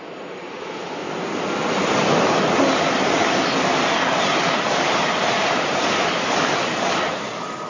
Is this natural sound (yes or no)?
yes